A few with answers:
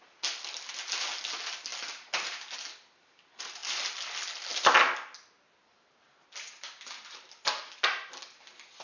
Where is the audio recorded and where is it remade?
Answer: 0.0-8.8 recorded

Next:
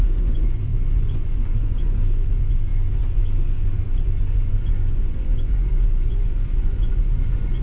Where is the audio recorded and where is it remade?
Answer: 0.0-7.6 remade

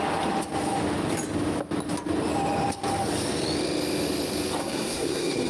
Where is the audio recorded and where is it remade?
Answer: 0.0-4.6 recorded; 4.6-5.5 remade